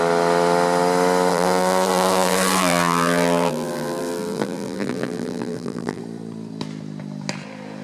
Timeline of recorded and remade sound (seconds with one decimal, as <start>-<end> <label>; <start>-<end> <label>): 0.0-1.3 recorded; 1.3-6.0 remade; 6.0-7.8 recorded